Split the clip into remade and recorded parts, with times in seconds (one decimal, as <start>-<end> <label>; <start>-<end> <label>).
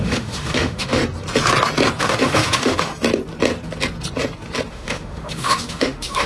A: 0.0-1.0 remade; 1.0-2.0 recorded; 2.0-2.9 remade; 2.9-4.7 recorded; 4.7-6.3 remade